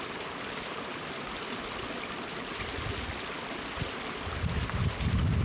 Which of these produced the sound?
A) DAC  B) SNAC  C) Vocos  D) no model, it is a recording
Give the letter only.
D